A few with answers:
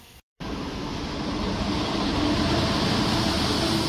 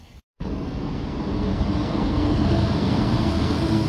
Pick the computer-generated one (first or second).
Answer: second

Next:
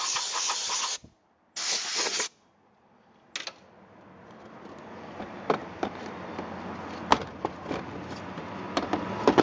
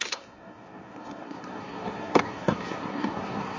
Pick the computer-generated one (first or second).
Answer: second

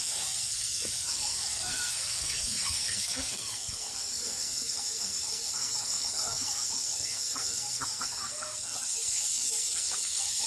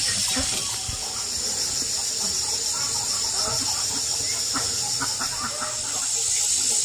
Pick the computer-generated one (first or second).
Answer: first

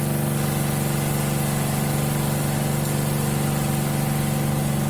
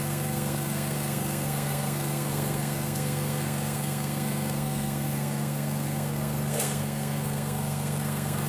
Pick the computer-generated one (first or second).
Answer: second